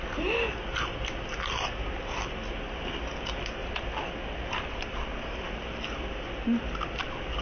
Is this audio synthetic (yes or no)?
no